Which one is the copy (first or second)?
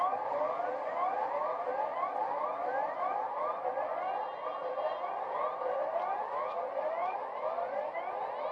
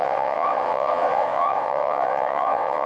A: second